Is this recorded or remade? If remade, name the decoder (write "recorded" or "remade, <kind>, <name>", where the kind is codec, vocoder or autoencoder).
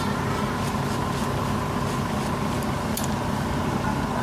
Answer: recorded